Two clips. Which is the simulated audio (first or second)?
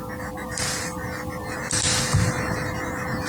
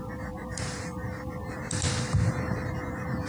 second